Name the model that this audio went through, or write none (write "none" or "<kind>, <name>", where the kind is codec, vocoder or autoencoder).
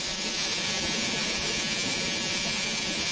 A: vocoder, Vocos